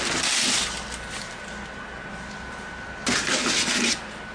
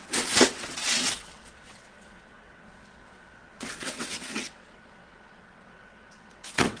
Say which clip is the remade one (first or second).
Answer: second